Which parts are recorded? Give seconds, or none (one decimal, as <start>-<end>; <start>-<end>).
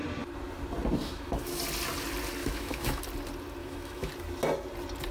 0.0-1.0; 1.6-2.4; 3.0-3.6; 4.1-5.1